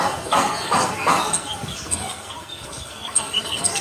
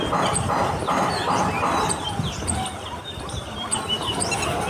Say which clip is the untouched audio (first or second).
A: second